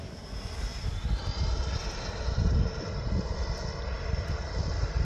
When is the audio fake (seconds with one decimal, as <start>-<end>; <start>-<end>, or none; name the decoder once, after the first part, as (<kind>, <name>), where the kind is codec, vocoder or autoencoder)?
none